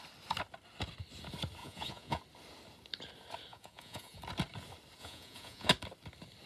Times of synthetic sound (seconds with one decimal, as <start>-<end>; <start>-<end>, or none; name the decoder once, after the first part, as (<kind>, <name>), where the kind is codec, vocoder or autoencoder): 1.6-2.2 (vocoder, Vocos); 3.5-4.2; 5.0-5.7